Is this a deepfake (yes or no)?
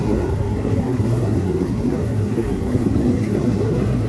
yes